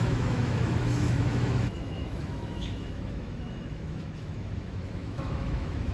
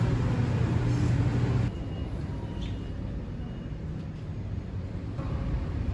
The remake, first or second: first